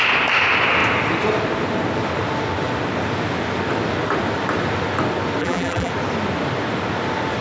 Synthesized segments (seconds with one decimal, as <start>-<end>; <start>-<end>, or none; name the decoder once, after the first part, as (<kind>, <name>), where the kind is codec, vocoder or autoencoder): 5.4-5.9 (vocoder, BigVGAN v2)